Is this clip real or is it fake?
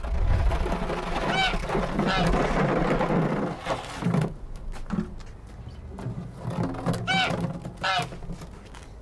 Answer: real